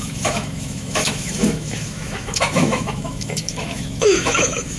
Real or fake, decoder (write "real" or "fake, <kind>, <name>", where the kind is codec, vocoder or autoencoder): fake, autoencoder, DAC-VAE